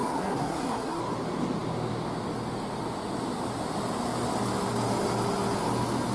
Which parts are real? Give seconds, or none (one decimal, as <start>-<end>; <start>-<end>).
1.0-6.1